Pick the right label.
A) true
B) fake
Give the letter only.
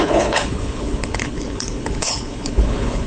B